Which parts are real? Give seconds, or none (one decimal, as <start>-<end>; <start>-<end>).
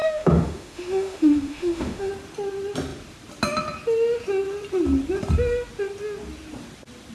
2.1-7.1